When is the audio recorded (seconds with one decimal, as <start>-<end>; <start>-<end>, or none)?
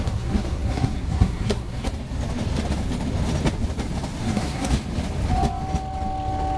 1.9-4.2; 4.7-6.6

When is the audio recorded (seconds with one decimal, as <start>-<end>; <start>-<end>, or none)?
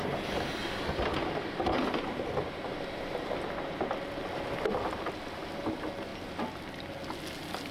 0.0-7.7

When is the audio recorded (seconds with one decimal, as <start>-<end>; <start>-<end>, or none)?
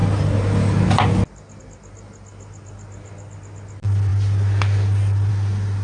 0.0-5.8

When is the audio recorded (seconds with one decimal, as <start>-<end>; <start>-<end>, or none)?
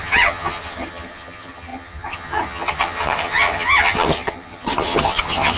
none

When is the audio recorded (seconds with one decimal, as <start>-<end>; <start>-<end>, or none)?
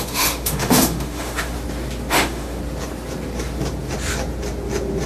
1.5-2.1; 2.6-5.1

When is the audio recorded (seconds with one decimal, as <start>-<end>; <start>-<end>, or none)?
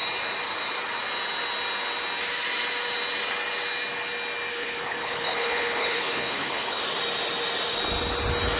0.0-4.5; 6.8-8.6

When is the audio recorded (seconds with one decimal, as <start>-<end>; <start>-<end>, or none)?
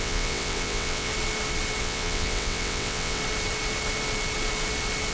1.1-1.8; 3.2-5.1